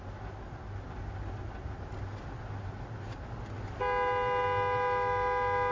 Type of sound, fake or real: real